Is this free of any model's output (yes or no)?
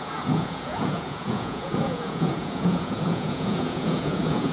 no